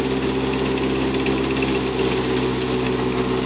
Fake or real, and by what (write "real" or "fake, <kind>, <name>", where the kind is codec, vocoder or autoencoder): real